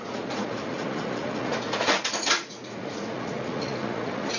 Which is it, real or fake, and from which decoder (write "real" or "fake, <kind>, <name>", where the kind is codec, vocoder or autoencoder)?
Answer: fake, vocoder, Vocos